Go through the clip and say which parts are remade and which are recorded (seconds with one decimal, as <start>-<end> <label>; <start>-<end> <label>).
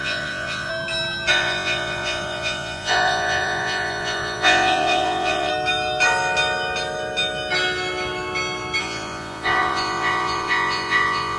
0.0-0.7 remade; 0.7-1.3 recorded; 1.3-5.5 remade; 5.5-8.8 recorded; 8.8-11.4 remade